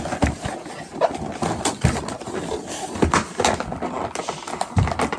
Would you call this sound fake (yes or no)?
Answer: no